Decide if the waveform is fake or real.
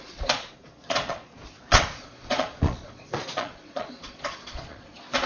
fake